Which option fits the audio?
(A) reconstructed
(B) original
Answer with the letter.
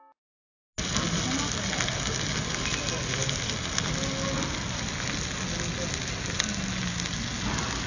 B